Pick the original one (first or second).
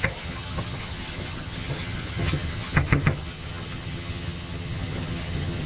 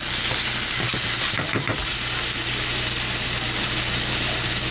second